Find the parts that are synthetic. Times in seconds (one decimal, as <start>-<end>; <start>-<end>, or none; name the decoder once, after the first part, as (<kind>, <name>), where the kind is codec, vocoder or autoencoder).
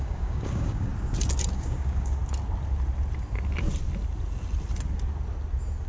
0.0-0.9 (codec, DAC); 1.5-2.2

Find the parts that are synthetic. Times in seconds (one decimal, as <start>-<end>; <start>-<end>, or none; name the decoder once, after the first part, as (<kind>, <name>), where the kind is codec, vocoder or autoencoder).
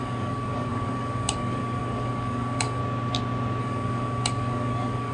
0.0-2.8 (codec, DAC); 3.6-5.1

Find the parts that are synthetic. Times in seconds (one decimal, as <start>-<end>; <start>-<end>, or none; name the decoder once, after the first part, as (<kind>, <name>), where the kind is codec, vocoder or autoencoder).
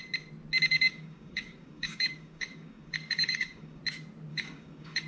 0.7-3.8 (codec, DAC); 4.3-5.1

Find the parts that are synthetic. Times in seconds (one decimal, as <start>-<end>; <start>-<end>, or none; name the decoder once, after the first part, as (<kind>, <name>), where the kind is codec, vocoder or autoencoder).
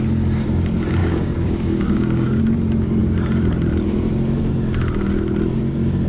1.0-2.4 (codec, DAC)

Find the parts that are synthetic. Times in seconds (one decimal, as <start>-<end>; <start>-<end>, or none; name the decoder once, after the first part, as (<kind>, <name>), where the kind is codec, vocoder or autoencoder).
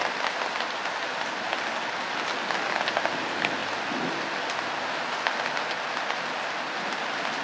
none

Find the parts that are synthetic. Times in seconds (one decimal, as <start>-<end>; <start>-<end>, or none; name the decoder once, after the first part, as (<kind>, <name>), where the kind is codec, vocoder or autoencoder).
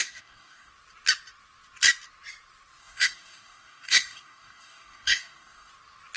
0.0-0.7 (codec, DAC); 2.8-5.7